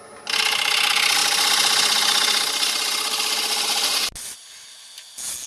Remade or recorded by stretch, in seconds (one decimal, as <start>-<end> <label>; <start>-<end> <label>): 0.0-5.5 recorded